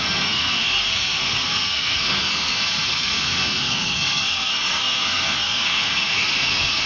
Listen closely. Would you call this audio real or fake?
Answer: fake